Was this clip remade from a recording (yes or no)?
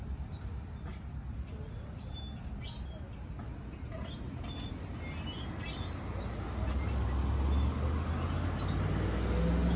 no